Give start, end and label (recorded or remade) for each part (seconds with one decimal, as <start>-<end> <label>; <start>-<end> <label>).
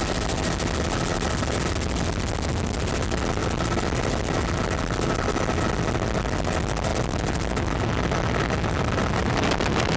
0.0-10.0 recorded